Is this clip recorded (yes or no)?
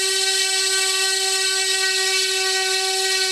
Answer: yes